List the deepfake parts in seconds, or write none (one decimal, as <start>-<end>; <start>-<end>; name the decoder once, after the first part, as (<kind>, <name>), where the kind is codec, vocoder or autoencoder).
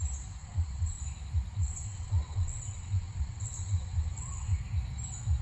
0.4-1.0 (vocoder, WaveNeXt); 1.6-4.6